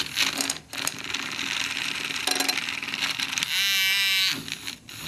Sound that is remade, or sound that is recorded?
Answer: recorded